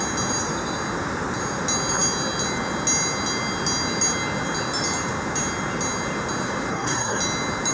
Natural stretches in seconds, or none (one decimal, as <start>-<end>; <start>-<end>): 0.0-6.7; 7.2-7.7